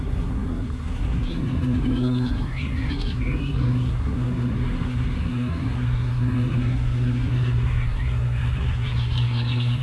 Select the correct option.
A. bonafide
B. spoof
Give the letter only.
B